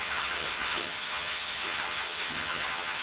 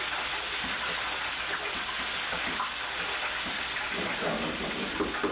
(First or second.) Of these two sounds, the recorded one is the second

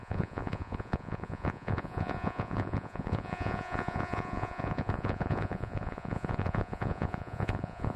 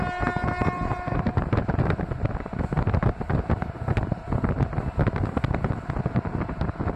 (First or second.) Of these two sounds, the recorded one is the second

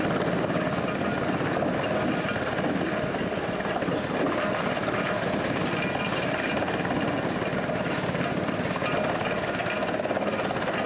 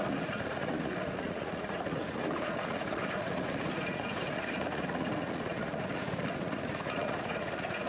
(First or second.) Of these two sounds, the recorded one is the first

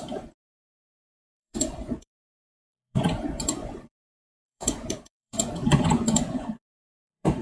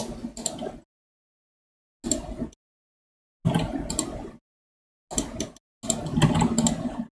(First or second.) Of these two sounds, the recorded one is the second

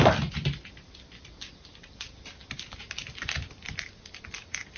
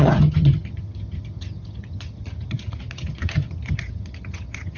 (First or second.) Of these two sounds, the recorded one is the first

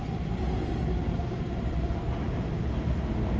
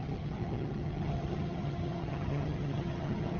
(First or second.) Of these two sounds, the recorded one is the first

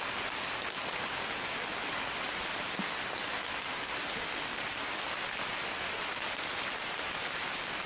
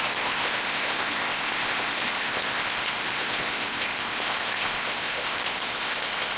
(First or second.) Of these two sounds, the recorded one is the first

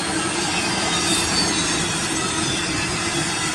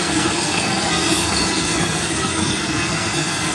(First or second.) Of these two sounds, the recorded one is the first